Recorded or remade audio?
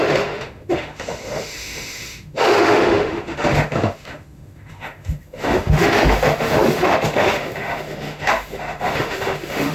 remade